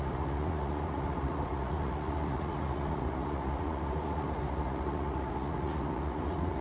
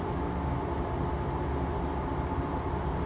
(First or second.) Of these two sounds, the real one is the second